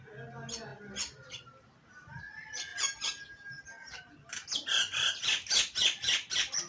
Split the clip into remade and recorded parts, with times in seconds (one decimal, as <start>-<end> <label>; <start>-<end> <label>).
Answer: 0.0-6.7 recorded